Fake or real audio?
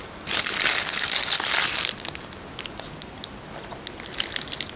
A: real